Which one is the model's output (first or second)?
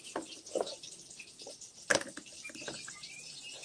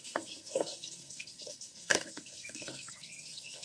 second